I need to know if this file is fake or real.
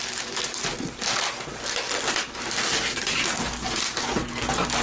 real